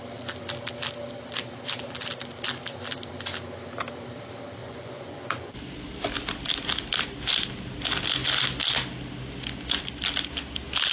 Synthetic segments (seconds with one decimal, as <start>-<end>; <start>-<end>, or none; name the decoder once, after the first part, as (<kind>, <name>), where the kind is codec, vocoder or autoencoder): 4.6-5.6 (vocoder, Vocos)